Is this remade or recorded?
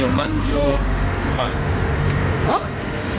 remade